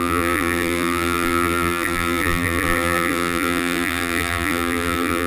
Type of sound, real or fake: fake